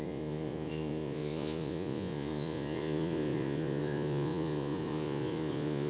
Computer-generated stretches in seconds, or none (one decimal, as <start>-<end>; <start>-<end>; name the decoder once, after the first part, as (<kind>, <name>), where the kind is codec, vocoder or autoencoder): 0.0-5.9 (vocoder, Vocos)